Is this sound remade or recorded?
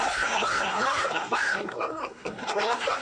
remade